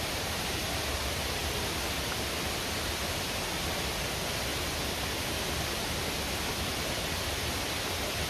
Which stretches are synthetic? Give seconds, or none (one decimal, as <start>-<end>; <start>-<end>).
0.0-1.4; 4.0-4.5; 6.5-8.3